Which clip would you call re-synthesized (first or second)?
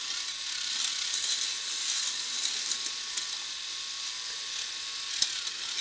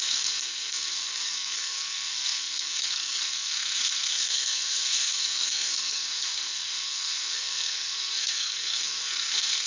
second